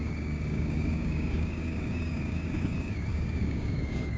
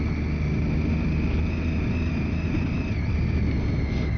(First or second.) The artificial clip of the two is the first